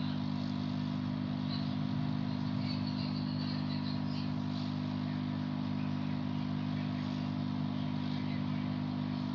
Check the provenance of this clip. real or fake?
real